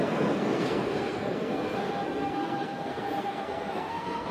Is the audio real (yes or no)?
no